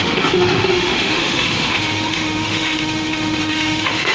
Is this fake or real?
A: fake